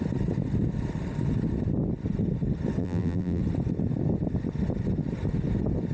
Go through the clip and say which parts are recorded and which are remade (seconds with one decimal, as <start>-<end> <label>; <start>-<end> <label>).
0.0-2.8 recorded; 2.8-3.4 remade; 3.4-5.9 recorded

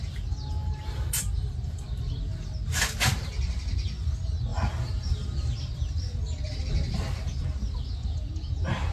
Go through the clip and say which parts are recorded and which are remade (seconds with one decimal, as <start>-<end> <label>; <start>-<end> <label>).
0.0-4.5 recorded; 4.5-6.6 remade; 6.6-8.9 recorded

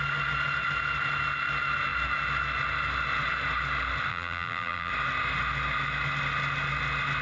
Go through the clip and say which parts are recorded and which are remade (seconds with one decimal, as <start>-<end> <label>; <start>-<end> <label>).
0.0-4.1 recorded; 4.1-4.9 remade; 4.9-7.2 recorded